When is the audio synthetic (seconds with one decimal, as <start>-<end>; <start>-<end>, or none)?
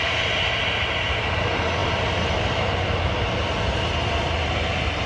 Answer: none